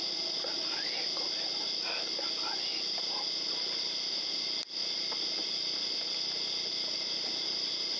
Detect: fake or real real